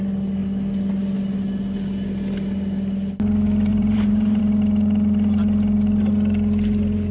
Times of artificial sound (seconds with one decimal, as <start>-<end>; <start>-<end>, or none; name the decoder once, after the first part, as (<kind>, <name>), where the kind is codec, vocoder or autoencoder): 3.7-4.4 (vocoder, BigVGAN v2)